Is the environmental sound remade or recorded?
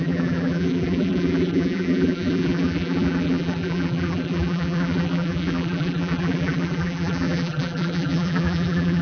remade